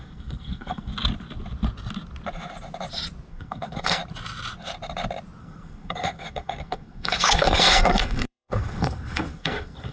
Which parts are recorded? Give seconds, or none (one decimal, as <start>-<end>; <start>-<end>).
0.9-3.3; 4.0-5.4